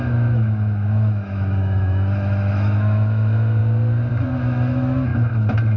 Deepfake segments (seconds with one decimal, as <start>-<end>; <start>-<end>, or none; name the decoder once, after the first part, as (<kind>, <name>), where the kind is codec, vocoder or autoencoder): 0.0-3.6 (autoencoder, DAC-VAE); 4.1-5.1